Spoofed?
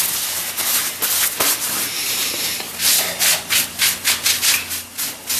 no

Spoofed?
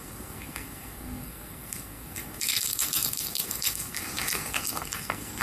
yes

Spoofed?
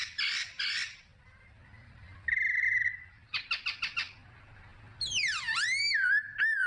no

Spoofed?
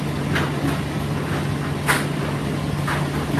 no